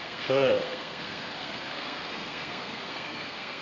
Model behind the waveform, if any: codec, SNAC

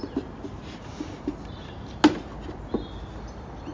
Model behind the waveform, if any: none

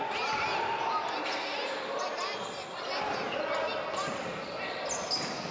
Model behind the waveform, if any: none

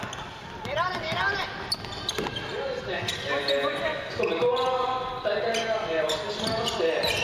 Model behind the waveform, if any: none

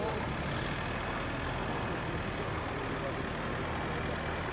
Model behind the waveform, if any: none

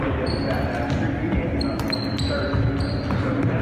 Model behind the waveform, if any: none